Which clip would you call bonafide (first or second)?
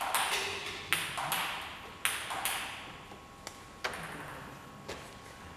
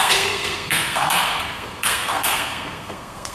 first